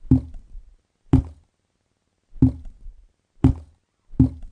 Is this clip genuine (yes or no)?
yes